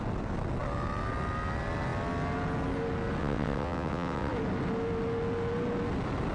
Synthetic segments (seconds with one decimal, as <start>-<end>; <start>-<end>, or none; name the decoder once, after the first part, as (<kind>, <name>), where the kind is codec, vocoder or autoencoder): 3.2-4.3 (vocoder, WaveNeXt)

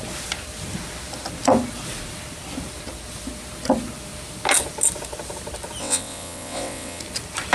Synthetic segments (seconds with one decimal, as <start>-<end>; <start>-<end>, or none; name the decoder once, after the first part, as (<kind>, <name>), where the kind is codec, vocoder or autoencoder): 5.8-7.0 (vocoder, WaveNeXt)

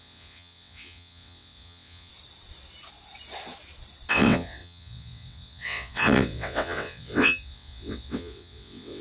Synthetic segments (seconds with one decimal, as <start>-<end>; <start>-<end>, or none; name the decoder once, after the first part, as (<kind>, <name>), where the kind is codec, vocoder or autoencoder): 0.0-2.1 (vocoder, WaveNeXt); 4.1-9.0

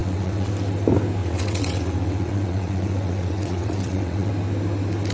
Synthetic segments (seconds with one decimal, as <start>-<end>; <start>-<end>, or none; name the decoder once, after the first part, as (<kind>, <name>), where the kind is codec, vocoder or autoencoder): 0.0-0.5 (vocoder, WaveNeXt); 1.2-4.3

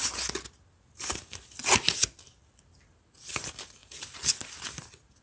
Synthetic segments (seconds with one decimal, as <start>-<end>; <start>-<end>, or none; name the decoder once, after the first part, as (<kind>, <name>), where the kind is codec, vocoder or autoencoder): none

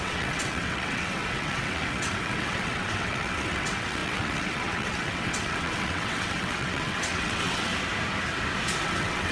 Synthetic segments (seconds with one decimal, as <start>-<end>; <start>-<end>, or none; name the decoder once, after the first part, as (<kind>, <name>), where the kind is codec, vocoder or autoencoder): 0.0-7.7 (vocoder, WaveNeXt); 8.8-9.3